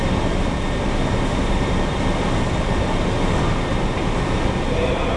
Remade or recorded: recorded